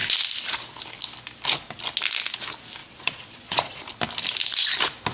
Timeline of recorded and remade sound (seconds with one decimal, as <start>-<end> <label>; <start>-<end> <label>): 0.0-2.8 recorded; 2.8-3.8 remade; 3.8-5.1 recorded